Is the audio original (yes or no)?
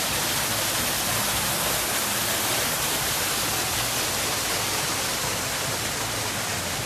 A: yes